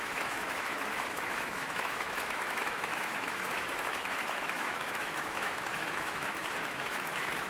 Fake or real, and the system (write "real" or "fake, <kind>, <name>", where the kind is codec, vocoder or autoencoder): fake, autoencoder, DAC-VAE